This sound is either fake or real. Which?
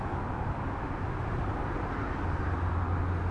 real